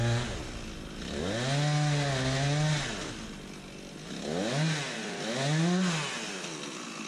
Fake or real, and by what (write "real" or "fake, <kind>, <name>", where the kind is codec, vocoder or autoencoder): real